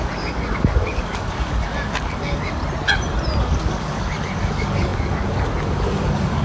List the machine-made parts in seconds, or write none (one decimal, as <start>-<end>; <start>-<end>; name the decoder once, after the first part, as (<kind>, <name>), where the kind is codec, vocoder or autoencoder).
0.0-2.6 (codec, DAC); 3.4-6.4